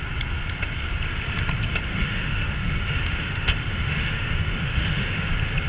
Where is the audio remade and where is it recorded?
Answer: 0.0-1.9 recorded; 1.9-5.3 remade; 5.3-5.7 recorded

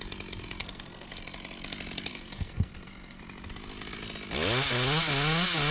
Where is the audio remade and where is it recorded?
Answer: 0.0-0.6 recorded; 0.6-1.1 remade; 1.1-2.1 recorded; 2.1-3.2 remade; 3.2-5.7 recorded

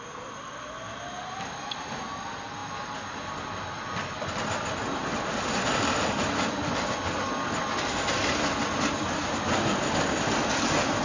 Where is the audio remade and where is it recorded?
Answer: 0.0-11.0 recorded

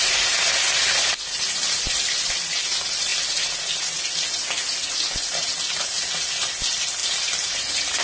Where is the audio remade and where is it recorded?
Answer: 0.0-8.0 recorded

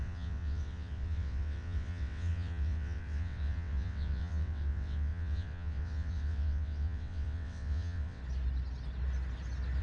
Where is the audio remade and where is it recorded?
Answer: 0.0-8.2 remade; 8.2-9.8 recorded